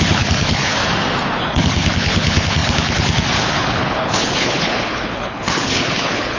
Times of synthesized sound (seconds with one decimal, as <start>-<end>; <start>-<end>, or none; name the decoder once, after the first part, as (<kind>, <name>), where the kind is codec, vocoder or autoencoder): 0.0-0.8 (codec, HILCodec); 1.4-6.4